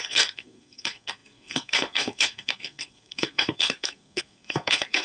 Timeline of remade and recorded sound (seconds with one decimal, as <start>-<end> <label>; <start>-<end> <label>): 0.0-5.0 remade